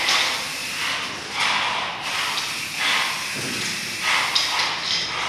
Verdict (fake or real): real